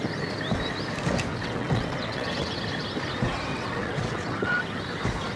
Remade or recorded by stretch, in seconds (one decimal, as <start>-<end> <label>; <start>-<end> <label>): 0.0-1.3 recorded; 1.3-2.6 remade; 2.6-3.5 recorded; 3.5-4.6 remade; 4.6-5.4 recorded